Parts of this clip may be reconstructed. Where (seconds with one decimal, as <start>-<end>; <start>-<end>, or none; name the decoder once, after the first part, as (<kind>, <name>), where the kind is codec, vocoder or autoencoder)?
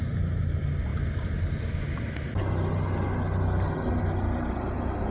none